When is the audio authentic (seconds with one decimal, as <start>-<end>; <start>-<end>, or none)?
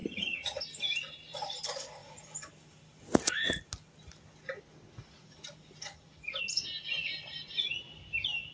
0.6-8.5